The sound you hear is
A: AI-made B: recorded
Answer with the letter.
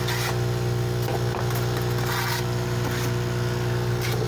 B